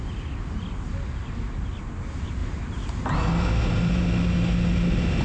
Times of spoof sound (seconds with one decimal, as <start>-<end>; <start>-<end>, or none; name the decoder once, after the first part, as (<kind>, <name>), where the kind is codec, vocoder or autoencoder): none